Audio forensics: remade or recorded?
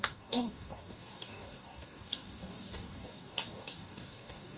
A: remade